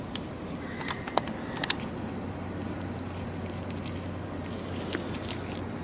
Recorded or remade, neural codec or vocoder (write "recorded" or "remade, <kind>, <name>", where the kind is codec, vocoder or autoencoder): recorded